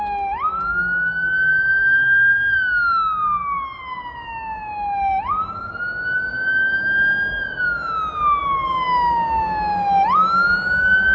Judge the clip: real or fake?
real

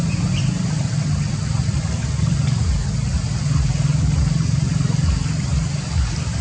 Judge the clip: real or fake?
real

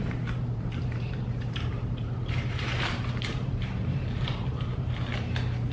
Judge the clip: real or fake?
fake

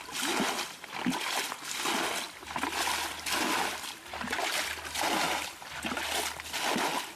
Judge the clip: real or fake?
real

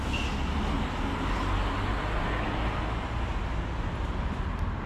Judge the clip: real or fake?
real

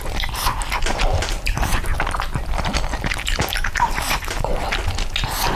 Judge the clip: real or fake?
real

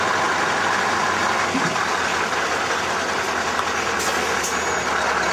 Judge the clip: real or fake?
real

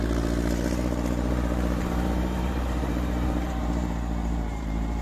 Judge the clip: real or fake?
fake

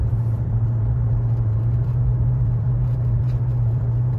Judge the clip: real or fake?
fake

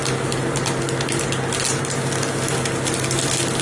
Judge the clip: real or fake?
real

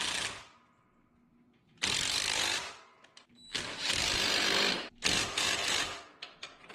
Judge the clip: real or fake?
real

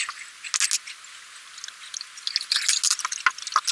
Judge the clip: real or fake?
real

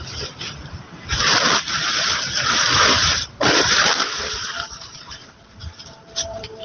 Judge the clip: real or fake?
fake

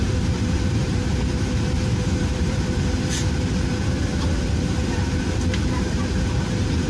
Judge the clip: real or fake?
fake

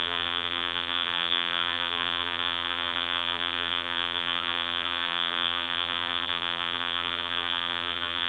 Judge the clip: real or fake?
fake